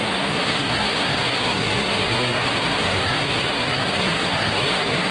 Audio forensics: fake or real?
fake